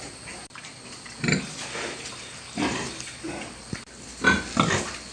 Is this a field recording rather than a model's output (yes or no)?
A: yes